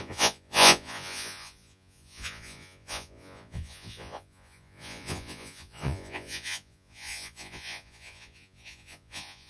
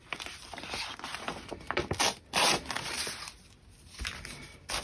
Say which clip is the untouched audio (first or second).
second